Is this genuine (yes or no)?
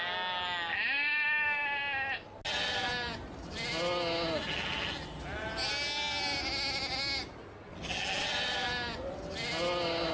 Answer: yes